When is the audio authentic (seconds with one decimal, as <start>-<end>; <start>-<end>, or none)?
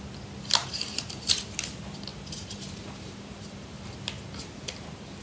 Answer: 0.0-0.6; 1.4-2.1; 4.3-5.2